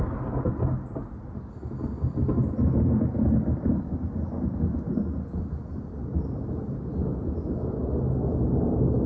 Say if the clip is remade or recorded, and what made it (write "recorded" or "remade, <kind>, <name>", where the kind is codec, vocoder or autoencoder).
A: recorded